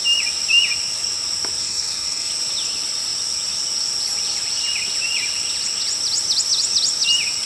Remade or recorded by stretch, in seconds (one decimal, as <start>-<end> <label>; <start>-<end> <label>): 0.0-1.6 recorded; 1.6-2.3 remade; 2.3-7.5 recorded